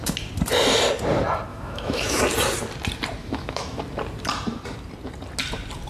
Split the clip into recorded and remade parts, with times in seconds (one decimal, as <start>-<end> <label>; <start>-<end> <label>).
0.0-1.5 recorded; 1.5-2.2 remade; 2.2-3.2 recorded; 3.2-3.8 remade; 3.8-5.9 recorded